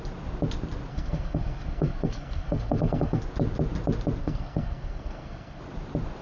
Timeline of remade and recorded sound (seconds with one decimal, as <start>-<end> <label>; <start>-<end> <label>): 0.0-0.9 recorded; 0.9-3.2 remade; 3.2-4.2 recorded; 4.2-5.6 remade; 5.6-6.2 recorded